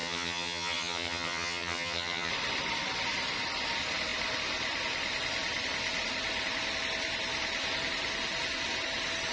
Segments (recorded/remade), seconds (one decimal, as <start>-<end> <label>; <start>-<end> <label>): 0.0-2.3 remade; 2.3-9.3 recorded